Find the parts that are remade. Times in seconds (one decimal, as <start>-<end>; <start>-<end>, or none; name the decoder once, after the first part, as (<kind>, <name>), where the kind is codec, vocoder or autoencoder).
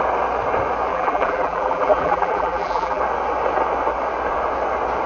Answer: 0.9-3.0 (vocoder, BigVGAN v2)